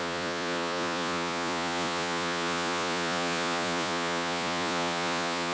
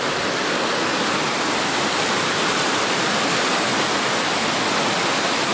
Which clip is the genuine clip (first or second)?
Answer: second